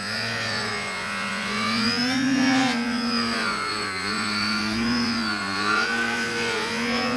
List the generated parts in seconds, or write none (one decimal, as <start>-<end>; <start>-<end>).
0.0-7.2